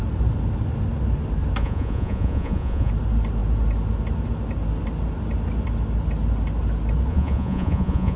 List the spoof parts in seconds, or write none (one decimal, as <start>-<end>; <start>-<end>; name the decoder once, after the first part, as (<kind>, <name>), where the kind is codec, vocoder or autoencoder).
1.6-2.9 (vocoder, Vocos); 7.1-8.2